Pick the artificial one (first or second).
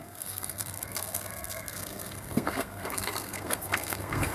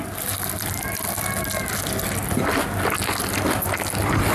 first